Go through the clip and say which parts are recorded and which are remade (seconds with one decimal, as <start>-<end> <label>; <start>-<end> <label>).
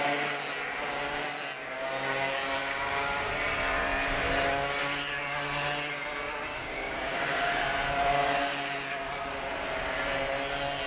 0.0-2.6 recorded; 2.6-3.3 remade; 3.3-6.6 recorded; 6.6-7.5 remade; 7.5-10.9 recorded